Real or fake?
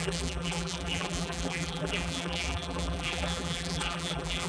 fake